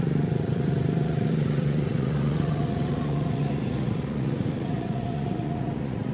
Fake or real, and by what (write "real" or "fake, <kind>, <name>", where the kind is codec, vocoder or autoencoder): fake, vocoder, Vocos